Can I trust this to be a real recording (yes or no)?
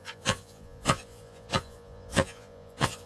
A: no